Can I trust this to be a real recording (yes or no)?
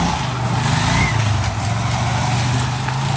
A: yes